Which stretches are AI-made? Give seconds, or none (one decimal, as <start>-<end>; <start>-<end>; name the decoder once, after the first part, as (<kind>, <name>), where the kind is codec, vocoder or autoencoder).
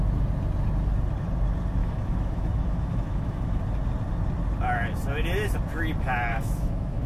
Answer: 1.8-3.6 (autoencoder, DAC-VAE); 6.3-7.1